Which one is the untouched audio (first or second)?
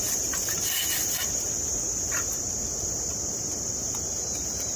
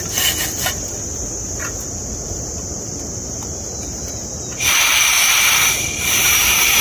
second